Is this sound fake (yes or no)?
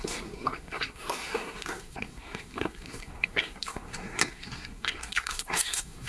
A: yes